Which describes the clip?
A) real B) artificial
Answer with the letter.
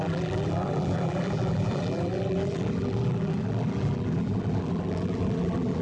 B